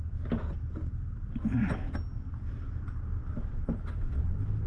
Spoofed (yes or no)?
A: no